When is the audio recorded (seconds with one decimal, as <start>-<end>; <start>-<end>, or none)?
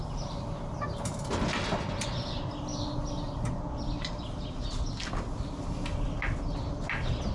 0.0-7.3